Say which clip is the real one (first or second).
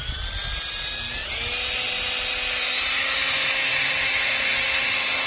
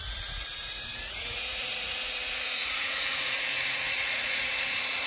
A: first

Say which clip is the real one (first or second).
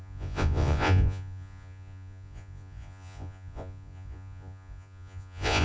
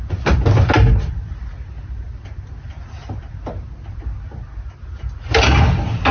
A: second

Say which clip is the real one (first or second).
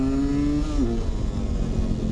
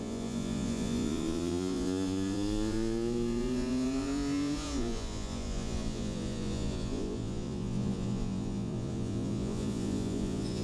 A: first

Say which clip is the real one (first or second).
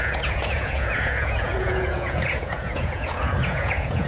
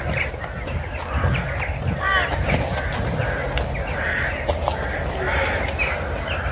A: second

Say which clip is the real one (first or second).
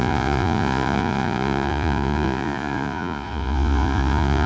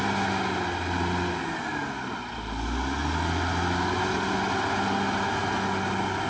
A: second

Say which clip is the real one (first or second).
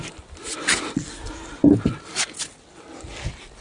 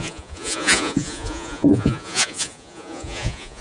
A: first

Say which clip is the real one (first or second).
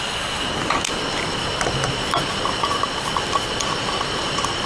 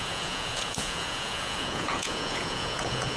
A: first